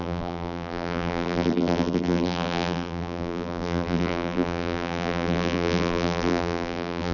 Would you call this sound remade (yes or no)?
yes